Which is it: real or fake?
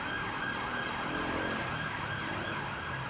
real